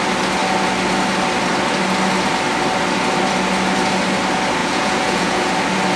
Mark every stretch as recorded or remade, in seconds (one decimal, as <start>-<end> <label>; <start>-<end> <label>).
0.0-4.6 recorded; 4.6-5.5 remade; 5.5-6.0 recorded